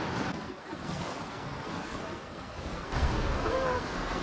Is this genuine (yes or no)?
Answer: no